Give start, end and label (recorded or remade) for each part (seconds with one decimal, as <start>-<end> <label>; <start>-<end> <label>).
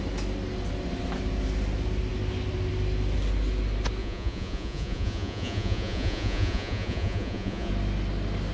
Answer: 0.0-4.0 recorded; 4.0-7.7 remade; 7.7-8.5 recorded